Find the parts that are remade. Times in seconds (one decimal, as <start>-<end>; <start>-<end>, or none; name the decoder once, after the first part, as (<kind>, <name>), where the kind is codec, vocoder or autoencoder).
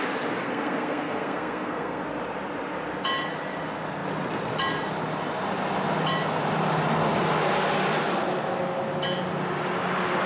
0.4-2.0 (codec, SNAC)